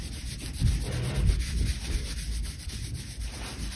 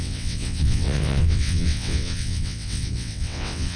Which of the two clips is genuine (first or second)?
first